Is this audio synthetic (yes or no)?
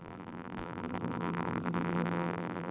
yes